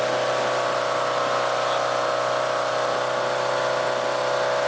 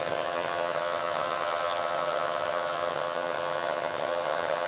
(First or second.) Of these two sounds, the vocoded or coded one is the second